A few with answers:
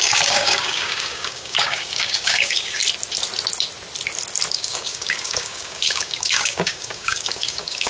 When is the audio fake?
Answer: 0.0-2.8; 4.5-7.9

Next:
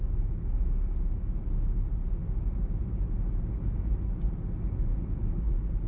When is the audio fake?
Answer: none